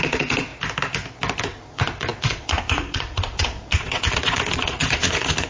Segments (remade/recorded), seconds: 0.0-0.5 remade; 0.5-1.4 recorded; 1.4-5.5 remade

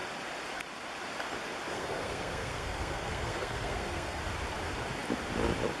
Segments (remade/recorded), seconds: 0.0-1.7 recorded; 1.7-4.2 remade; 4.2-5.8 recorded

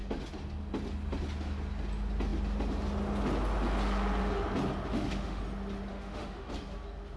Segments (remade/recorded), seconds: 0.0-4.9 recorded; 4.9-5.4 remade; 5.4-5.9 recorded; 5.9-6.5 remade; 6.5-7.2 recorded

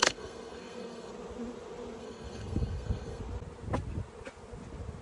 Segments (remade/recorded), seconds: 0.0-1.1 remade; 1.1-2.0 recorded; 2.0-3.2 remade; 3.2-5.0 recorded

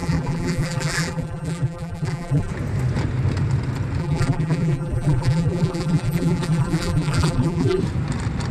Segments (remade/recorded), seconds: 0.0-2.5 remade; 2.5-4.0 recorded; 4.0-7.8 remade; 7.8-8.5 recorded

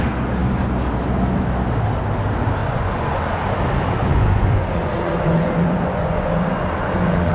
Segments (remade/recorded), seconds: 0.0-2.6 recorded; 2.6-3.4 remade; 3.4-4.0 recorded; 4.0-7.3 remade